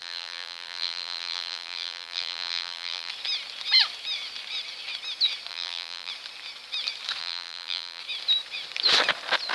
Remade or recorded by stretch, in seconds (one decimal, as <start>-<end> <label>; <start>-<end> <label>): 0.0-3.1 remade; 3.1-5.5 recorded; 5.5-6.1 remade; 6.1-7.2 recorded; 7.2-8.0 remade; 8.0-9.5 recorded